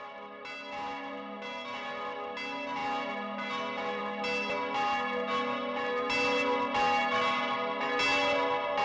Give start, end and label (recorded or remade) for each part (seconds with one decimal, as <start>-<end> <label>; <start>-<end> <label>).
0.0-8.8 recorded